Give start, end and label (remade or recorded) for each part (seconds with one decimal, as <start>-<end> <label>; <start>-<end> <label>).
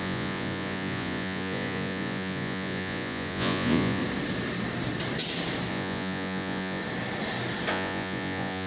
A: 0.0-4.0 remade; 4.0-5.7 recorded; 5.7-6.8 remade; 6.8-7.7 recorded; 7.7-8.7 remade